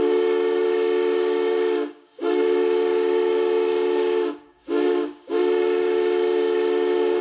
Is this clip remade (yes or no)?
yes